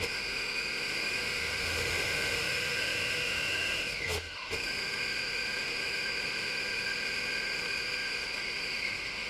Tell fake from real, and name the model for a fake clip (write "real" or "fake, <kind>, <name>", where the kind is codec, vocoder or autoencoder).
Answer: fake, autoencoder, DAC-VAE